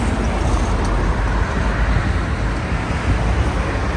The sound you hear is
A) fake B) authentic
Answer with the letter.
B